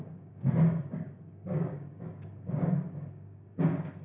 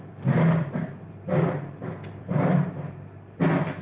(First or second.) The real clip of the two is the second